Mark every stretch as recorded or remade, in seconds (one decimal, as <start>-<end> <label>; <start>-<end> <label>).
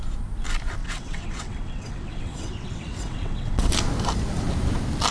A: 0.0-0.8 recorded; 0.8-3.7 remade; 3.7-5.1 recorded